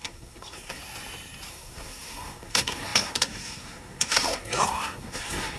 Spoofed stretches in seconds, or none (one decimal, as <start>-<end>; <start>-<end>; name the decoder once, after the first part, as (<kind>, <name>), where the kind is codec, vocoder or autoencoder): 0.0-0.8 (codec, SNAC); 1.5-5.6